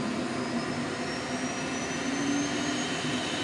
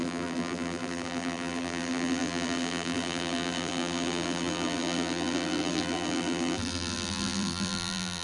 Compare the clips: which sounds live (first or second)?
first